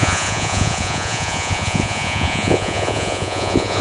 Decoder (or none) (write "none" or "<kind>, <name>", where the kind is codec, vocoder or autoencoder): vocoder, Vocos